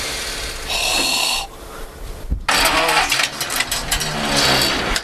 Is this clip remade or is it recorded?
recorded